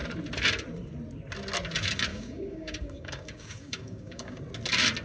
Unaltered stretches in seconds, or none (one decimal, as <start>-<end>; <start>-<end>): 0.0-2.1; 4.4-5.0